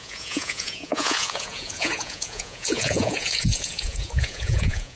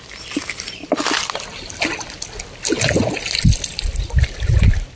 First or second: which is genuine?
second